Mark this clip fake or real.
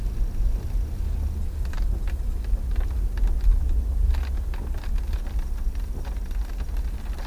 real